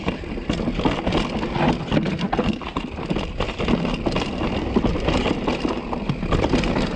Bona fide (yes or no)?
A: yes